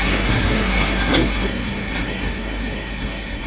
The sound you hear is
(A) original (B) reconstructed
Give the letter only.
B